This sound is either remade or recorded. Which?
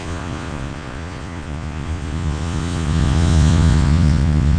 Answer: remade